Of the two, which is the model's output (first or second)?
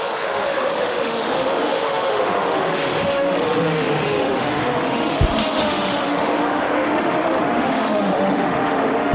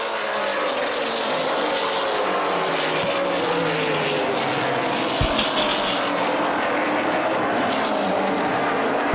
first